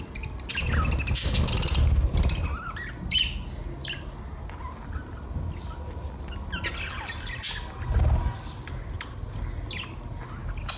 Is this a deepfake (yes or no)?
no